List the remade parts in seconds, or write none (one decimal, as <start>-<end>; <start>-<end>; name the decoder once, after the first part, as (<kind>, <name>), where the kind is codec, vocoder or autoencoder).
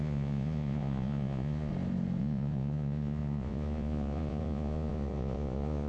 0.0-1.7 (vocoder, Vocos); 2.2-5.9